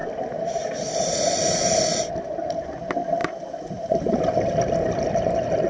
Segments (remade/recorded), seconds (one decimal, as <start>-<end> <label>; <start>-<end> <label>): 0.0-1.9 recorded; 1.9-2.8 remade; 2.8-3.2 recorded; 3.2-4.2 remade; 4.2-5.7 recorded

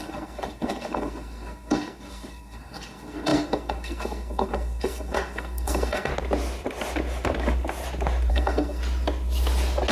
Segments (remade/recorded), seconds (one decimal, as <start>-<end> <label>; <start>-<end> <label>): 0.0-6.1 remade; 6.1-8.3 recorded; 8.3-8.8 remade; 8.8-9.9 recorded

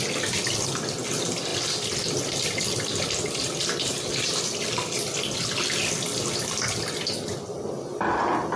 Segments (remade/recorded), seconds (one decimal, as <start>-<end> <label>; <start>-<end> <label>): 0.0-8.6 recorded

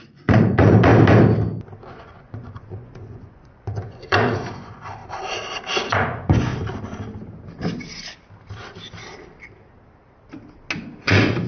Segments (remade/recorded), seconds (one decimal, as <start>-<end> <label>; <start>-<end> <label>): 0.0-0.9 remade; 0.9-1.9 recorded; 1.9-5.0 remade; 5.0-5.9 recorded; 5.9-6.5 remade; 6.5-11.0 recorded; 11.0-11.5 remade

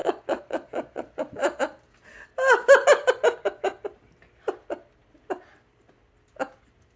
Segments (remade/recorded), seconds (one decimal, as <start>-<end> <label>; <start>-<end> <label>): 0.0-1.6 remade; 1.6-7.0 recorded